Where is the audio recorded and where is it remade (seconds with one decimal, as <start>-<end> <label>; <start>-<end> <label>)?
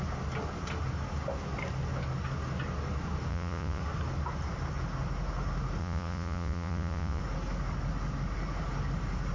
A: 0.0-3.3 recorded; 3.3-3.8 remade; 3.8-5.8 recorded; 5.8-7.2 remade; 7.2-9.3 recorded